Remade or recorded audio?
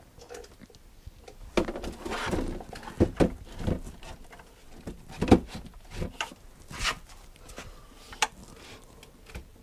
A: recorded